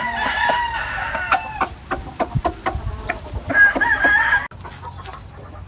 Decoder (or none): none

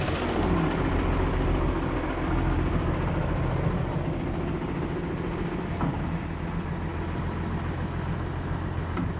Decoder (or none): none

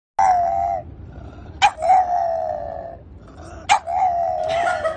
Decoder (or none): none